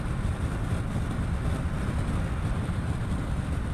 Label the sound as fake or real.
real